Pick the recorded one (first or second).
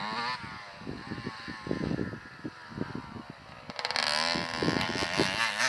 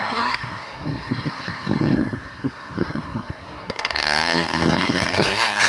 first